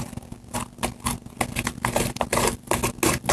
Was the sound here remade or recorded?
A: recorded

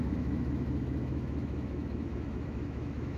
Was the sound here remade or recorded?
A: remade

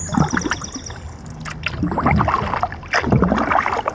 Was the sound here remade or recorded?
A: recorded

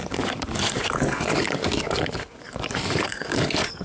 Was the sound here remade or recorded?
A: remade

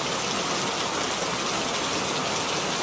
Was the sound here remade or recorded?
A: recorded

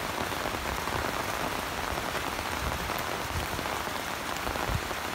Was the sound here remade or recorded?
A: recorded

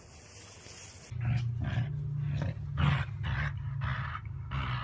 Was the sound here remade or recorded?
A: recorded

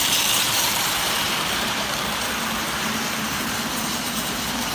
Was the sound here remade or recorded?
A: remade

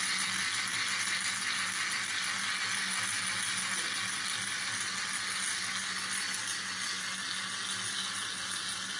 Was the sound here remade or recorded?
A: recorded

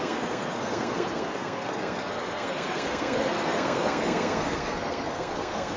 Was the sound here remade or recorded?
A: remade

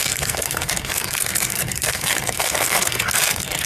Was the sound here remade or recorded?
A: remade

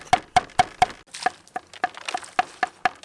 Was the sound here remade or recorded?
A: recorded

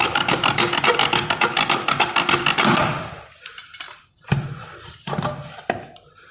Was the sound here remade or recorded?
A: recorded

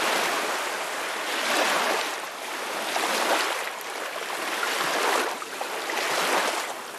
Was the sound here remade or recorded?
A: recorded